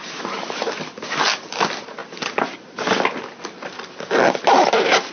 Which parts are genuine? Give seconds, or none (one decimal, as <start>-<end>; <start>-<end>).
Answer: 0.0-5.1